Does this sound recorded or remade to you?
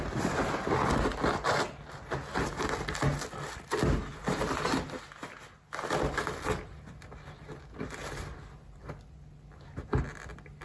recorded